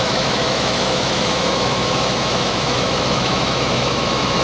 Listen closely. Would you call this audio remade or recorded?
remade